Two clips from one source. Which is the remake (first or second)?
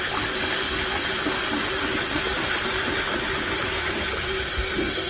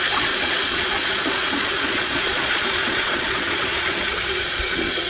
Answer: second